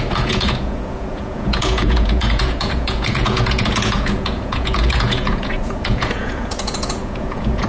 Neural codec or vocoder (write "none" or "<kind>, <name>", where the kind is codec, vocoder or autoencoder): vocoder, Vocos